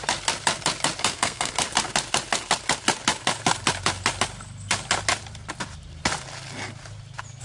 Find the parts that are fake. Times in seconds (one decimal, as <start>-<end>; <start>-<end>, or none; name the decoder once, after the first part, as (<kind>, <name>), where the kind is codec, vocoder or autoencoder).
1.0-1.5 (codec, SNAC)